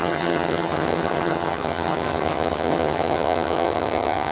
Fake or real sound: fake